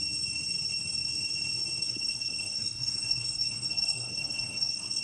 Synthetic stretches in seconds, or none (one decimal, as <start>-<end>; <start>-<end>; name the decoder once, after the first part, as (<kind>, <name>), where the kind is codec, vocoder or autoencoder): 1.8-5.0 (codec, SNAC)